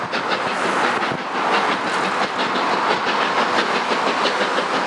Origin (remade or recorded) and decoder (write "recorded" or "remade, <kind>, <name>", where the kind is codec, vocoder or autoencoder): recorded